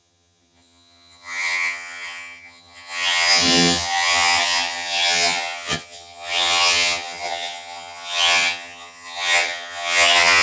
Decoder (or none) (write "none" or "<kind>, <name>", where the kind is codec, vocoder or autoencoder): vocoder, HiFi-GAN